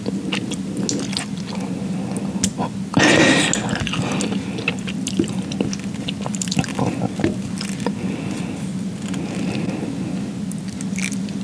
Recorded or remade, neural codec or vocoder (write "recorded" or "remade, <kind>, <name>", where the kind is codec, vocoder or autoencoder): recorded